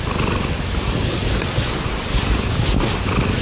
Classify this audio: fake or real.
real